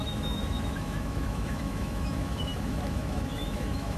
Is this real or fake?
fake